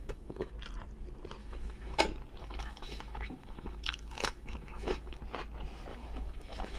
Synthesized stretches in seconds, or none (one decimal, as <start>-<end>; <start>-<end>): 0.0-0.5; 1.4-2.0; 2.4-5.2; 5.9-6.8